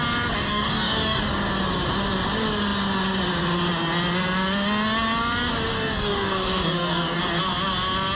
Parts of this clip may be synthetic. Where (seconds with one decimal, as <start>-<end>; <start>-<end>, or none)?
0.4-1.2; 5.7-7.2